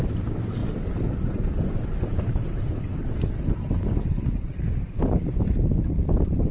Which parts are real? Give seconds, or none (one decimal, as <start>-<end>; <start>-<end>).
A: 0.0-6.5